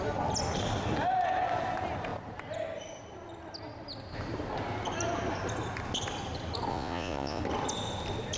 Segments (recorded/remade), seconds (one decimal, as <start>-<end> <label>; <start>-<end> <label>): 0.0-6.7 recorded; 6.7-7.4 remade; 7.4-8.4 recorded